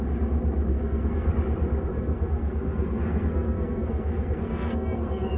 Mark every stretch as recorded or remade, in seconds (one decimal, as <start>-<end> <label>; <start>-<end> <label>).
0.0-0.7 recorded; 0.7-1.3 remade; 1.3-1.9 recorded; 1.9-5.4 remade